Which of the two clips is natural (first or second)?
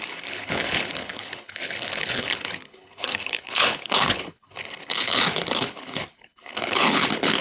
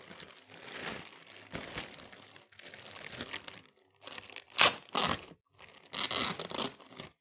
second